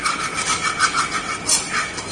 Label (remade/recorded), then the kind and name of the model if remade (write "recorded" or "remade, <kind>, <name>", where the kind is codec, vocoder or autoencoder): recorded